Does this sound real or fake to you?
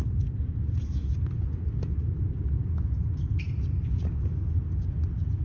real